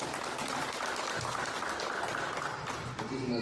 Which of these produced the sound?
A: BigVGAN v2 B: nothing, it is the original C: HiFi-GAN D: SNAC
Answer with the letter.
B